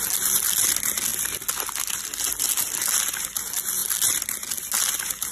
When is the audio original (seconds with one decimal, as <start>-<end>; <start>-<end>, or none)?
0.0-5.3